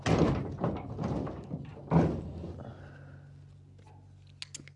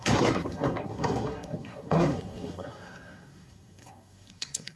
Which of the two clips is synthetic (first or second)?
second